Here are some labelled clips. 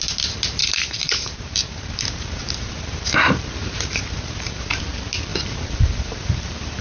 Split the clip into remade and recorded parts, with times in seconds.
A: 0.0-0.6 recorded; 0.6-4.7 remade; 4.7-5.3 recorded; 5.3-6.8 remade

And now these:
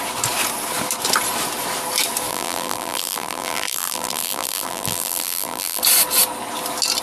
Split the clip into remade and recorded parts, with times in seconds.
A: 0.0-2.3 recorded; 2.3-5.8 remade; 5.8-7.0 recorded

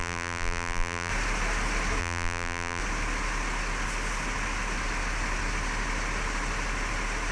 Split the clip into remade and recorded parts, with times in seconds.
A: 0.0-1.1 remade; 1.1-2.0 recorded; 2.0-2.8 remade; 2.8-7.3 recorded

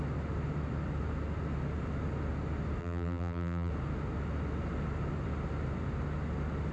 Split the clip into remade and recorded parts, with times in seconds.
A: 0.0-2.8 recorded; 2.8-3.7 remade; 3.7-6.7 recorded

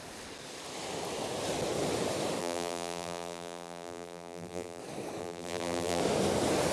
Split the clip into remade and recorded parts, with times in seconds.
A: 0.0-2.4 recorded; 2.4-4.8 remade; 4.8-5.2 recorded; 5.2-6.0 remade; 6.0-6.7 recorded